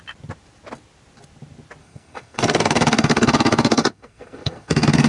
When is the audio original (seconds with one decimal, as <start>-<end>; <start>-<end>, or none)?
0.0-1.8